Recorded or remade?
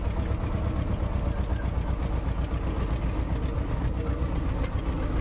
recorded